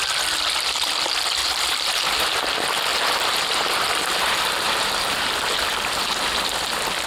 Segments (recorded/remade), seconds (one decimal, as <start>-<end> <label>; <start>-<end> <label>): 0.0-1.4 recorded; 1.4-2.4 remade; 2.4-2.9 recorded; 2.9-6.4 remade; 6.4-7.1 recorded